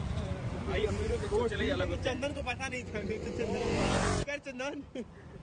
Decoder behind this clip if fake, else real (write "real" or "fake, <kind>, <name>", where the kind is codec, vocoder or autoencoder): fake, vocoder, Vocos